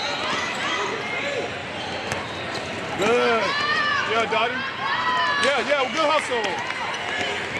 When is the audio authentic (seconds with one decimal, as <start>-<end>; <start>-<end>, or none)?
0.0-7.6